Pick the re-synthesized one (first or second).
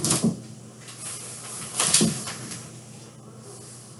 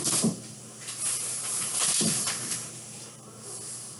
second